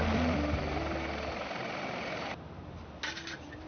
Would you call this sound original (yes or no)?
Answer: yes